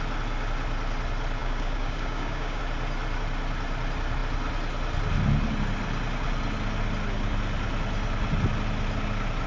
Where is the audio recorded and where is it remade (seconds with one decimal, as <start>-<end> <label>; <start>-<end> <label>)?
0.0-1.4 recorded; 1.4-2.6 remade; 2.6-9.5 recorded